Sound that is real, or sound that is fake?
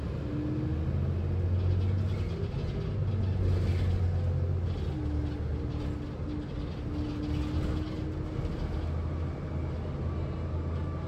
real